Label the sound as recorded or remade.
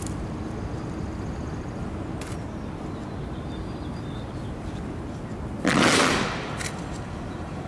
recorded